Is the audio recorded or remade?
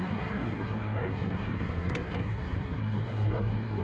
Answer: remade